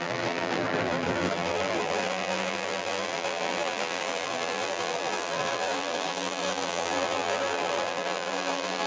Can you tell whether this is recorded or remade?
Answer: remade